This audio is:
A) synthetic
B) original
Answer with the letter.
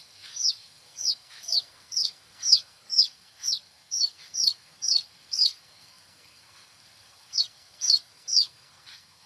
A